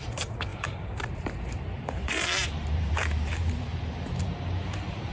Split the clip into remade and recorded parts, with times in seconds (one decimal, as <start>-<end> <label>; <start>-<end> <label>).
0.0-5.1 remade